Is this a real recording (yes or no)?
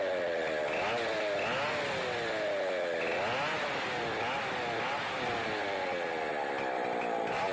yes